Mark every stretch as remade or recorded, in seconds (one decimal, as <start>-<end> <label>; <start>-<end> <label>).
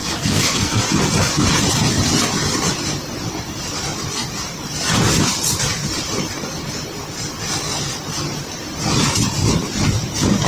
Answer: 0.0-0.8 remade; 0.8-10.5 recorded